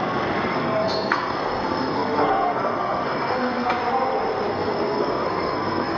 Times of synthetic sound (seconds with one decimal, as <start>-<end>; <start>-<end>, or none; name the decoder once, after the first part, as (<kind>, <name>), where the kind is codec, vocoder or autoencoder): 0.0-3.8 (codec, SNAC); 4.5-6.0